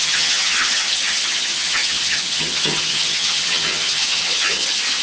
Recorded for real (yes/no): no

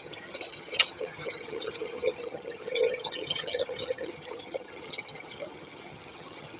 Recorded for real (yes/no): no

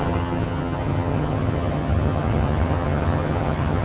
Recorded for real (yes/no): no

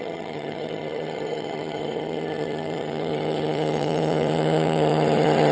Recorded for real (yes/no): no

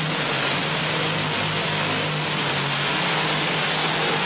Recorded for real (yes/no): yes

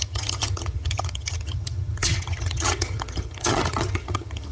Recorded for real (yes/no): no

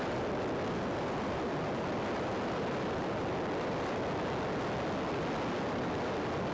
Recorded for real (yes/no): yes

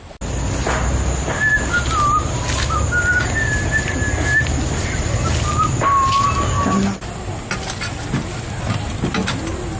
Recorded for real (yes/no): yes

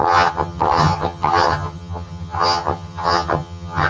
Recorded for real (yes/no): no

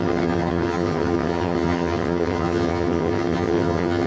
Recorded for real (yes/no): no